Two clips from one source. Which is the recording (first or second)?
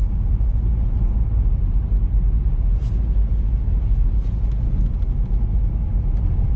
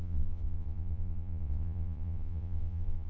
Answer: first